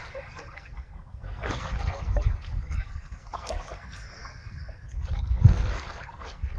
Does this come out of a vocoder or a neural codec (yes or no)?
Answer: yes